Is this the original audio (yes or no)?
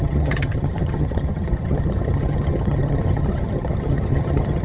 no